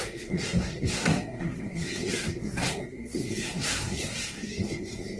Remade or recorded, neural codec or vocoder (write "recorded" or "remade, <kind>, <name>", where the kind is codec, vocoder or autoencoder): remade, codec, SNAC